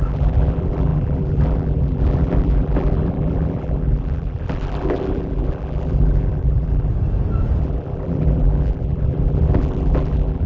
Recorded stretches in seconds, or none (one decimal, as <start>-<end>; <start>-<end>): 6.9-7.6

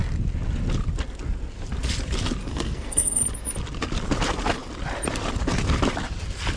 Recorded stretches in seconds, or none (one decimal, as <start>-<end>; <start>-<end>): 0.0-2.4; 3.2-6.6

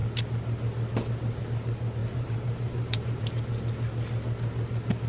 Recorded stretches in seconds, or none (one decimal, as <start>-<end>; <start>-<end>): 0.0-2.0; 3.3-5.1

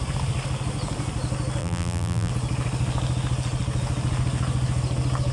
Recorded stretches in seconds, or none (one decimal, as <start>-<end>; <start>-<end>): 0.0-1.6; 2.3-5.3

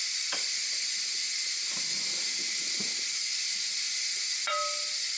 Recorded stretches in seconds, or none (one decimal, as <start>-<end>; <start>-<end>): 0.6-1.5

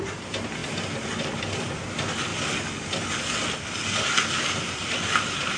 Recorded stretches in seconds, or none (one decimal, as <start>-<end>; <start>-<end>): 0.6-1.2; 2.3-4.4

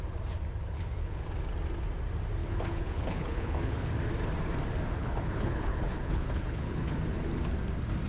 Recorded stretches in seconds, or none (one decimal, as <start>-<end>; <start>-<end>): 0.0-0.6; 1.2-2.4; 3.9-5.0; 7.0-8.1